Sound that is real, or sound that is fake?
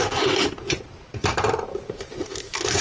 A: fake